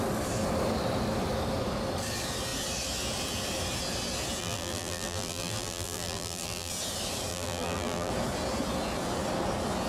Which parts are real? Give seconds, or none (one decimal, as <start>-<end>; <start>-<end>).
0.0-4.4; 6.7-7.3; 8.1-9.9